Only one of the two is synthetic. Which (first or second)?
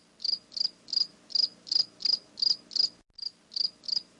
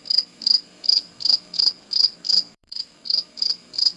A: second